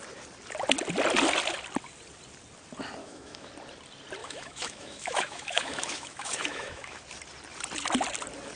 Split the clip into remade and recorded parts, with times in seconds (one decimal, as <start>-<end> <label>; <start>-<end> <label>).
0.0-3.0 recorded; 3.0-3.5 remade; 3.5-4.2 recorded; 4.2-7.0 remade; 7.0-8.6 recorded